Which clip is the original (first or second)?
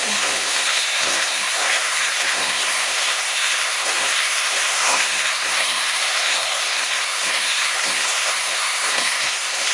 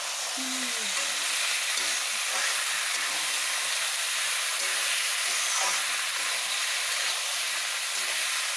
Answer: second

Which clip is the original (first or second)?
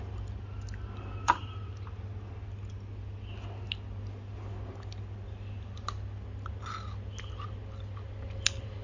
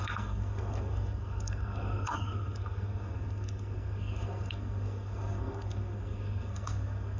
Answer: first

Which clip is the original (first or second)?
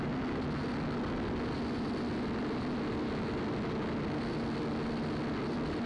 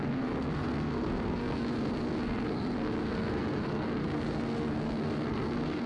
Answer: first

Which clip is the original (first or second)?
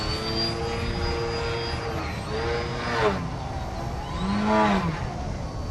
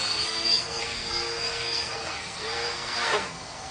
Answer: first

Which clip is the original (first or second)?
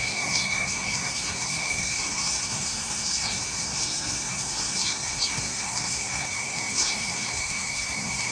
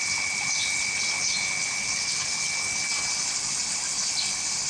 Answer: second